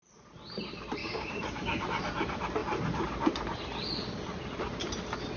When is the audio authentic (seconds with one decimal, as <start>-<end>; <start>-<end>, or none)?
0.0-1.0; 1.8-5.4